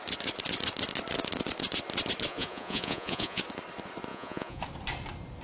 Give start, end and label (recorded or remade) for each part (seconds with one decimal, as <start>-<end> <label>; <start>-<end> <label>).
0.0-2.3 recorded; 2.3-3.4 remade; 3.4-4.1 recorded; 4.1-4.6 remade; 4.6-5.4 recorded